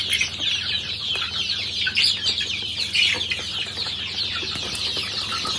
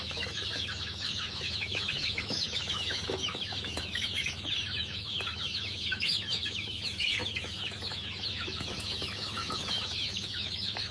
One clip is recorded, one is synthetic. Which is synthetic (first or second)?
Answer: second